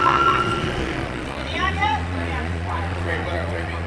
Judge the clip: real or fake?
fake